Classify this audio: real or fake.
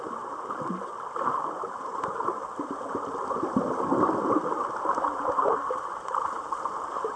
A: real